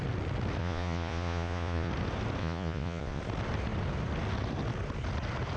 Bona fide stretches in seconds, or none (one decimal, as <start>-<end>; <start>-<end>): 0.0-0.6; 1.9-2.4; 3.2-5.6